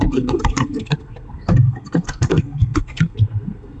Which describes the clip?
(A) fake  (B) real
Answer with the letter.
A